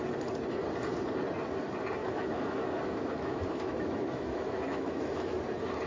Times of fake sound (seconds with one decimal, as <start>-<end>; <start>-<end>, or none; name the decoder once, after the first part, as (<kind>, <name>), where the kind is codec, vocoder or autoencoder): 2.0-5.4 (autoencoder, DAC-VAE)